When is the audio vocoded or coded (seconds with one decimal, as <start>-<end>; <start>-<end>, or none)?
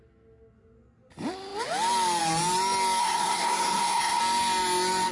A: 3.0-4.2